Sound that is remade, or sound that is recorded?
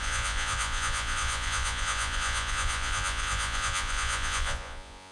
remade